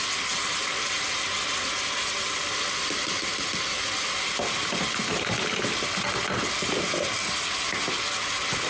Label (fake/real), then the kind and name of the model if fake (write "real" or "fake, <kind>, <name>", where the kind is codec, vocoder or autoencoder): real